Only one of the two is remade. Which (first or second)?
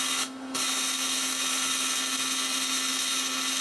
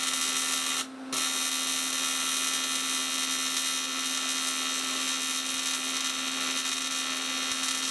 first